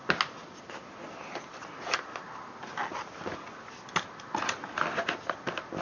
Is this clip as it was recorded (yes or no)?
yes